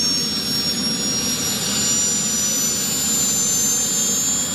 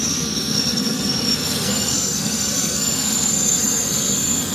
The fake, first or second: second